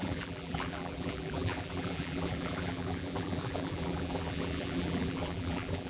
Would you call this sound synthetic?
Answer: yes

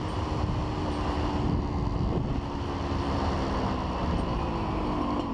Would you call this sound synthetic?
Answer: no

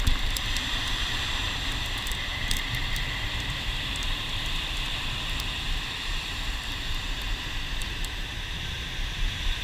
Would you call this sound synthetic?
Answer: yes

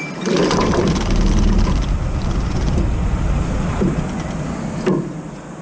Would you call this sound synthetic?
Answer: no